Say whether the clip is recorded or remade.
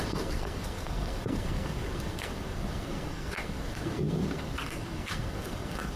remade